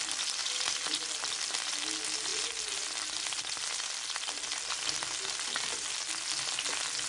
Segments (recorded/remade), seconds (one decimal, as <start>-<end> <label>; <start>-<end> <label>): 0.0-0.4 recorded; 0.4-1.0 remade; 1.0-7.1 recorded